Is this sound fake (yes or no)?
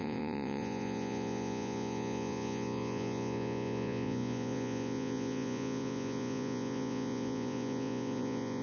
yes